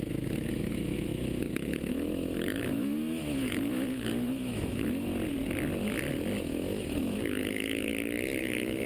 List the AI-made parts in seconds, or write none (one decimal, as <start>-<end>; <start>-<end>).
0.0-5.1; 6.4-7.9; 8.4-8.9

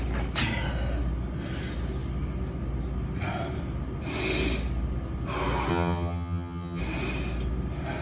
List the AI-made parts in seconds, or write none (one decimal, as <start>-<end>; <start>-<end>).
5.7-6.8